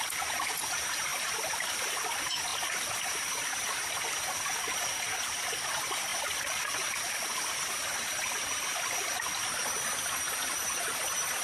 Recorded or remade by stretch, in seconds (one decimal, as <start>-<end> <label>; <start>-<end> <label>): 0.0-1.1 recorded; 1.1-1.9 remade; 1.9-2.5 recorded; 2.5-3.3 remade; 3.3-6.1 recorded; 6.1-7.5 remade; 7.5-11.4 recorded